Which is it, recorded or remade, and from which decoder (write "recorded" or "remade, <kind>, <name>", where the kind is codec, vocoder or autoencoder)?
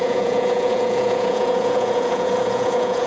remade, vocoder, Vocos